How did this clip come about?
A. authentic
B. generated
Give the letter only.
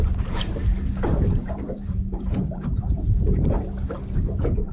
B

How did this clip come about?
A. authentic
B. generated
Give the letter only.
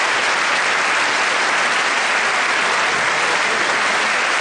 A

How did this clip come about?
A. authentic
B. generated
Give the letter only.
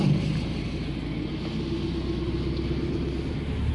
A